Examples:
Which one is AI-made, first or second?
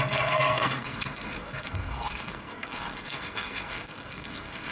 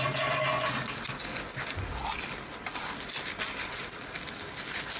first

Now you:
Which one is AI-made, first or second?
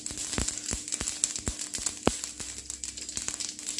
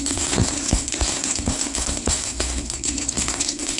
second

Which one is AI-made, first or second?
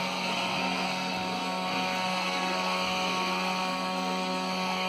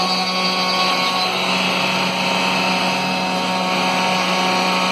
first